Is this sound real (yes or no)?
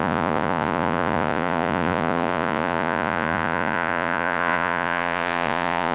no